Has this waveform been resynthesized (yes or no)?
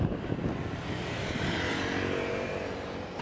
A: no